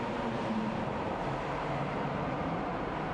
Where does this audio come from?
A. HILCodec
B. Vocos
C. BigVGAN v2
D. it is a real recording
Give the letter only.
C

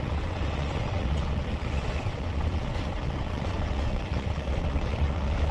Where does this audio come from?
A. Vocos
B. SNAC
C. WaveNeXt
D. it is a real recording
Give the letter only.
C